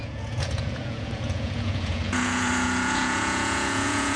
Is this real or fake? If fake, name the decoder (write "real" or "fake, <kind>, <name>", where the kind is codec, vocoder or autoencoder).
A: fake, vocoder, Vocos